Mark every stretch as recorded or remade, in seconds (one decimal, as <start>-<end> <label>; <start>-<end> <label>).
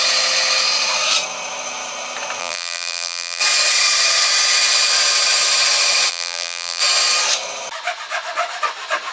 0.0-2.4 recorded; 2.4-3.4 remade; 3.4-6.1 recorded; 6.1-6.8 remade; 6.8-9.1 recorded